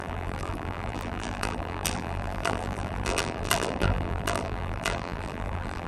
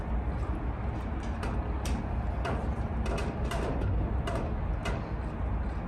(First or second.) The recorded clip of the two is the second